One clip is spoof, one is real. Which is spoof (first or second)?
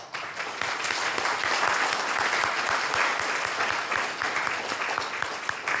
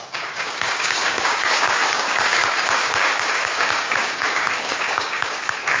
second